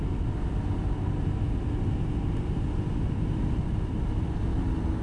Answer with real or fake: real